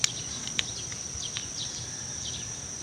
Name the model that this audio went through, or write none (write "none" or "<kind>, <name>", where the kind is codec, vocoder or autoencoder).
vocoder, BigVGAN v2